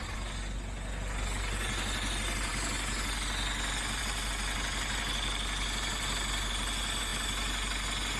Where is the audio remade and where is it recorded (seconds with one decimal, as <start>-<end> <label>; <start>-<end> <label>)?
0.0-8.2 recorded